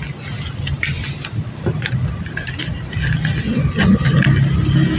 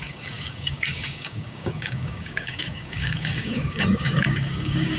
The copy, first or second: second